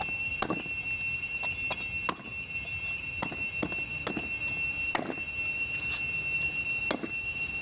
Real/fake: real